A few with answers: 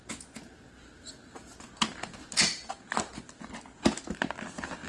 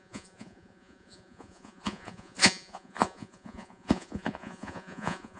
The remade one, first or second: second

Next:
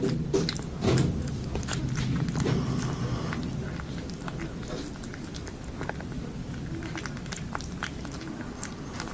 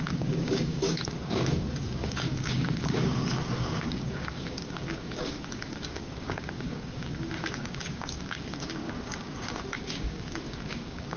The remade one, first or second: second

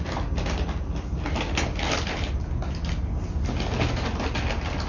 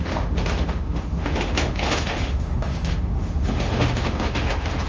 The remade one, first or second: second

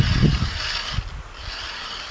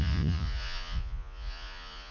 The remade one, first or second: second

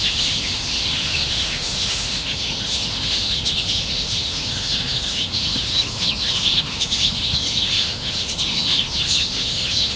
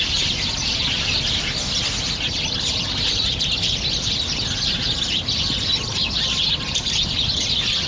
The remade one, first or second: first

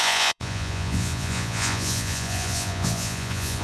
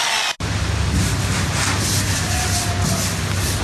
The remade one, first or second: first